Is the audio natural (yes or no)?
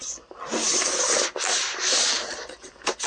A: yes